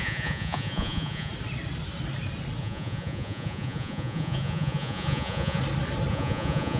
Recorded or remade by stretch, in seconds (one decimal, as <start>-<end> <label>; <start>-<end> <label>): 0.0-1.3 remade; 1.3-2.6 recorded; 2.6-5.6 remade; 5.6-6.1 recorded; 6.1-6.8 remade